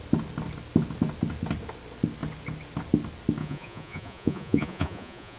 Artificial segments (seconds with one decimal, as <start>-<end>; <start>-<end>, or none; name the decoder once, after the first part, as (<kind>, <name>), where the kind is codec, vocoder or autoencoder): 3.4-5.4 (vocoder, Vocos)